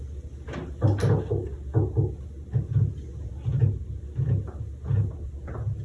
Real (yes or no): yes